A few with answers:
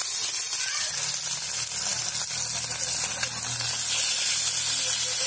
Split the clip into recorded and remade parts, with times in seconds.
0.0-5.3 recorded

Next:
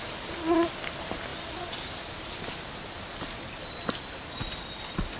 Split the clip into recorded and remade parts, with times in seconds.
0.0-5.2 recorded

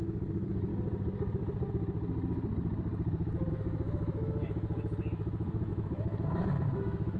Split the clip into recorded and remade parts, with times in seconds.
0.0-0.7 remade; 0.7-3.5 recorded; 3.5-7.2 remade

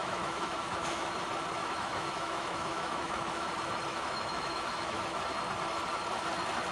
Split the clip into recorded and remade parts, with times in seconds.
0.0-1.1 remade; 1.1-1.6 recorded; 1.6-3.5 remade; 3.5-3.9 recorded; 3.9-5.2 remade; 5.2-6.7 recorded

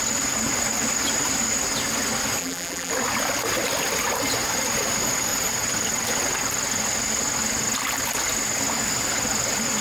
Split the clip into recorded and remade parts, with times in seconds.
0.0-2.4 recorded; 2.4-2.9 remade; 2.9-9.8 recorded

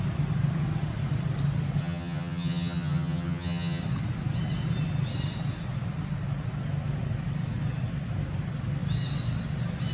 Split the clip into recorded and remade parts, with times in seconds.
0.0-1.8 recorded; 1.8-3.8 remade; 3.8-9.9 recorded

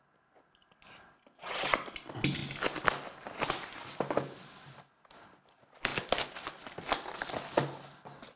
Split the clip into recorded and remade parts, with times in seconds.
0.0-8.4 recorded

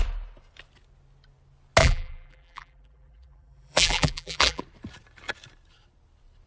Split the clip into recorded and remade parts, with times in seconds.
0.0-1.8 recorded; 1.8-4.6 remade; 4.6-6.5 recorded